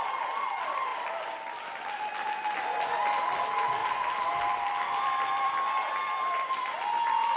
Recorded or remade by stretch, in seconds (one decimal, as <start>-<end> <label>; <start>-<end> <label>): 0.0-0.9 recorded; 0.9-2.0 remade; 2.0-3.8 recorded; 3.8-6.5 remade; 6.5-7.4 recorded